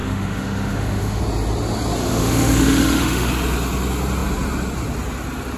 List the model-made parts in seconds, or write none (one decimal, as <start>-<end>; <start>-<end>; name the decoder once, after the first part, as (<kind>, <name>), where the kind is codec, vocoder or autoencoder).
0.0-1.2 (autoencoder, DAC-VAE); 2.0-3.3